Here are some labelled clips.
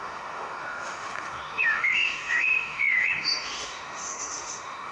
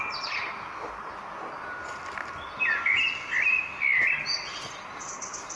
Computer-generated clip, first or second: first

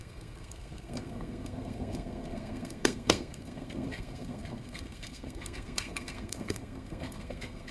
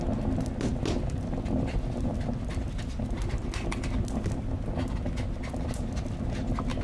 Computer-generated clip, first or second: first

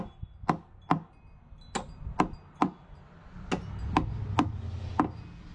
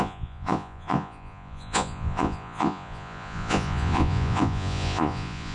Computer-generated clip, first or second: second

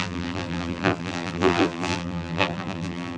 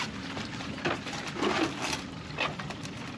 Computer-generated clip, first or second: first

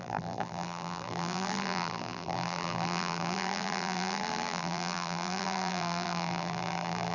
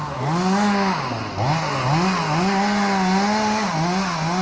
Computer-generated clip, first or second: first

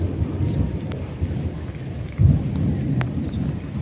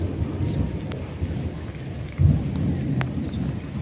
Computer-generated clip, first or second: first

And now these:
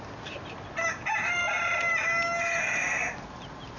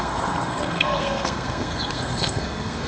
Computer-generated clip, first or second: second